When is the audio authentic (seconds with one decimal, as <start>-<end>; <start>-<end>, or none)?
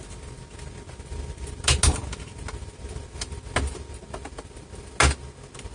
0.0-5.7